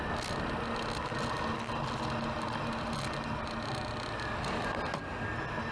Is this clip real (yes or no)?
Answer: yes